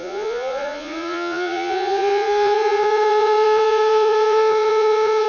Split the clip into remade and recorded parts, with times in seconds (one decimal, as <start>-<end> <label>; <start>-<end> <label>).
0.0-5.3 remade